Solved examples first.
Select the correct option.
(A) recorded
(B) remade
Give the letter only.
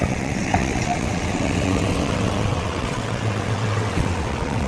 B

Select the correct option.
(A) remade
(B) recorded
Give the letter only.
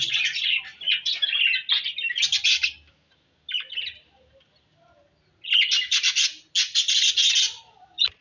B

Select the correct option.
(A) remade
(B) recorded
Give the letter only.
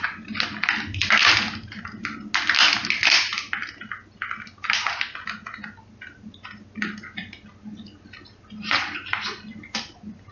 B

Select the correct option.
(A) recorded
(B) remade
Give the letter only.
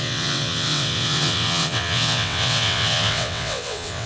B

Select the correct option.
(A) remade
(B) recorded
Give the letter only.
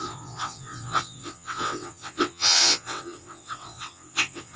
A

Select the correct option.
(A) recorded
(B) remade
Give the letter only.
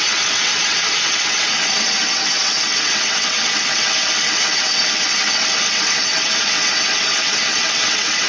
B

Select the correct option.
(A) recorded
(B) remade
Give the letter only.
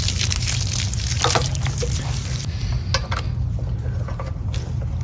A